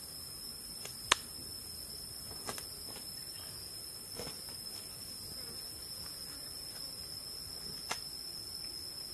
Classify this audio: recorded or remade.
recorded